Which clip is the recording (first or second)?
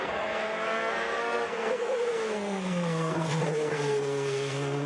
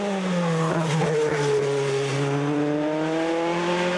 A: second